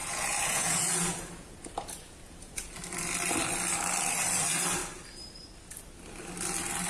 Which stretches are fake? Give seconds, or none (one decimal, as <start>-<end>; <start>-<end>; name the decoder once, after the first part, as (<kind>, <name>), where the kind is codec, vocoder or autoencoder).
0.0-2.7 (vocoder, Vocos)